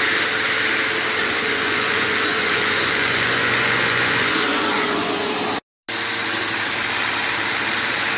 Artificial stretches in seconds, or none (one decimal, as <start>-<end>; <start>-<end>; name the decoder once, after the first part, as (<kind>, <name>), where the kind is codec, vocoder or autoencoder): 1.2-5.3 (vocoder, Vocos)